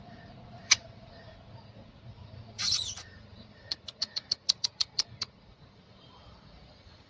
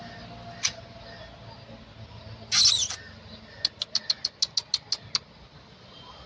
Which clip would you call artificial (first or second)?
first